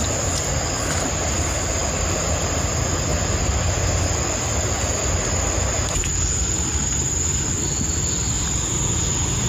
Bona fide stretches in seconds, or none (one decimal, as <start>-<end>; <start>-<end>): 0.0-1.8; 2.4-9.5